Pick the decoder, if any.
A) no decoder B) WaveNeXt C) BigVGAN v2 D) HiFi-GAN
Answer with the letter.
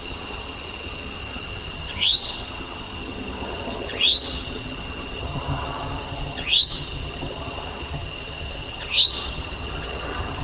D